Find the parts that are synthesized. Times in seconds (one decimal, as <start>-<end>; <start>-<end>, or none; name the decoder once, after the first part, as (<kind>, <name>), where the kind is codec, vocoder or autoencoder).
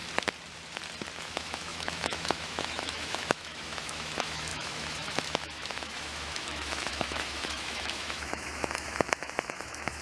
1.2-10.0 (autoencoder, DAC-VAE)